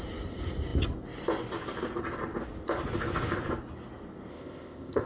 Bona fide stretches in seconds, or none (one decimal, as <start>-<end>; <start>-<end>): 0.0-4.3